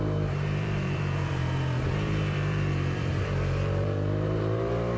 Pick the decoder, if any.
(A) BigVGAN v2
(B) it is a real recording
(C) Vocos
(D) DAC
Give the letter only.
A